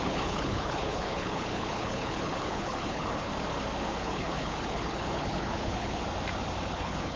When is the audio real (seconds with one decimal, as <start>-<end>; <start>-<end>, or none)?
3.3-4.0; 6.0-6.7